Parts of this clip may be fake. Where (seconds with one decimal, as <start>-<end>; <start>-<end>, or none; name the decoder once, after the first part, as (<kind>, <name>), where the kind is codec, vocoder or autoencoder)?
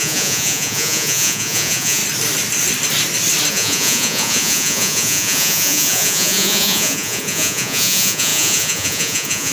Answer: 0.0-2.0 (vocoder, Vocos); 3.5-9.5